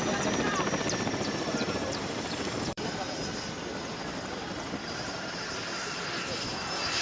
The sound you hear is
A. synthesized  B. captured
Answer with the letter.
A